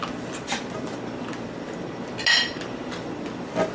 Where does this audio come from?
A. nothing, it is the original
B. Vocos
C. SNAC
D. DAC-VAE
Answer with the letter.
A